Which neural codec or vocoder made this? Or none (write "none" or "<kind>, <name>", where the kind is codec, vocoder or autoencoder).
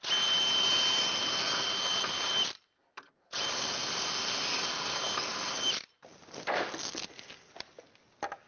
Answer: none